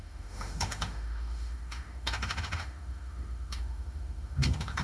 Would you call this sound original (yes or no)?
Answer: no